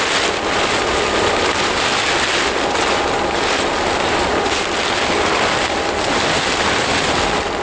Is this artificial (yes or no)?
no